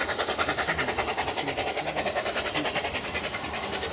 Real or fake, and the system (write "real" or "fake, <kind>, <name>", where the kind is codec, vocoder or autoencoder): real